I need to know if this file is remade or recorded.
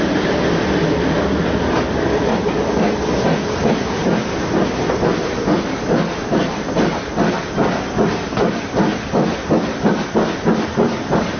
recorded